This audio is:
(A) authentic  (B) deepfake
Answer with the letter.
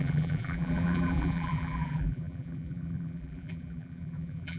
B